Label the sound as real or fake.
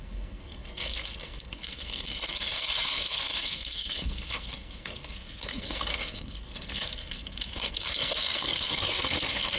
fake